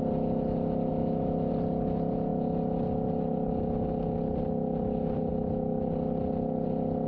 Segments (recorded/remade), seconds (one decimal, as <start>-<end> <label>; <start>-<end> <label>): 0.0-0.9 recorded; 0.9-1.5 remade; 1.5-7.1 recorded